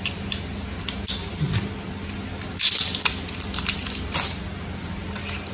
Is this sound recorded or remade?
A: recorded